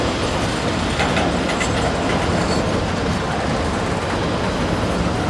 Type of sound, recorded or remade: recorded